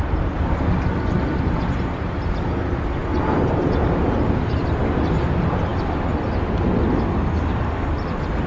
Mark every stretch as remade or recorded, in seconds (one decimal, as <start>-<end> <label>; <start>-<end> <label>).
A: 0.0-8.5 recorded